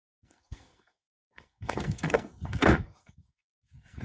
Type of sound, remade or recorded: remade